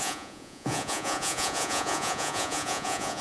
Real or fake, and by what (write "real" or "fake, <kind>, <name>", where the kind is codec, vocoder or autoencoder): fake, vocoder, Vocos